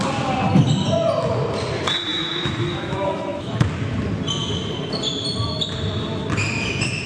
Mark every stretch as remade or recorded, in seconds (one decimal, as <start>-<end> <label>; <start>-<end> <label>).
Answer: 0.0-2.1 recorded; 2.1-3.6 remade; 3.6-7.1 recorded